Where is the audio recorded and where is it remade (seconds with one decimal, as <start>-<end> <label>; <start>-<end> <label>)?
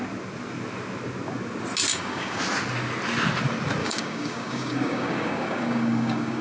0.0-1.9 recorded; 1.9-2.4 remade; 2.4-3.8 recorded; 3.8-6.4 remade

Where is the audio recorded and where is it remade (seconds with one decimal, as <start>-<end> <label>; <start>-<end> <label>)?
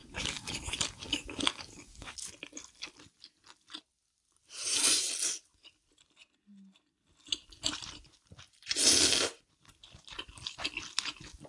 0.0-2.3 remade; 2.3-11.5 recorded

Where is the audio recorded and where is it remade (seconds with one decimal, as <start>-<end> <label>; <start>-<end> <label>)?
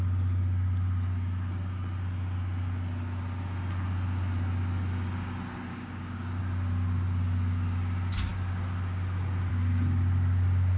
0.0-5.7 recorded; 5.7-6.4 remade; 6.4-10.8 recorded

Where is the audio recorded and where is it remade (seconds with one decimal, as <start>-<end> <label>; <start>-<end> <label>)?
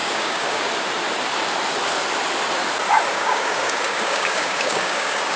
0.0-0.7 remade; 0.7-3.1 recorded; 3.1-5.4 remade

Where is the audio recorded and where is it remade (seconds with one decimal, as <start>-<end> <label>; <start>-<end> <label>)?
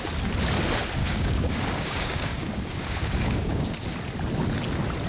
0.0-1.0 recorded; 1.0-3.7 remade; 3.7-5.1 recorded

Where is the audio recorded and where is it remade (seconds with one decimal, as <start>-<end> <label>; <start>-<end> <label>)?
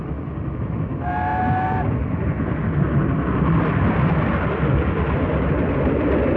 0.0-6.4 recorded